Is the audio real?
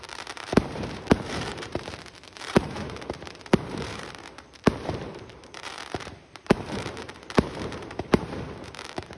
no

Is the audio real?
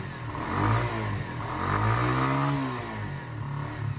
yes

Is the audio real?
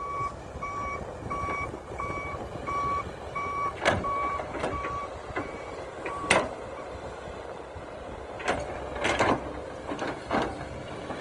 no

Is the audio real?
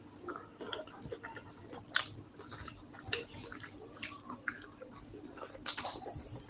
yes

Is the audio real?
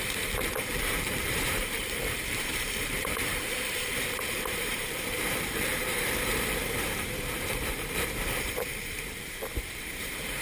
no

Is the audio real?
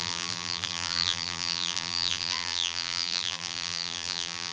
no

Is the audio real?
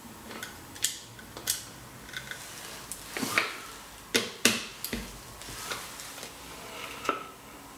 yes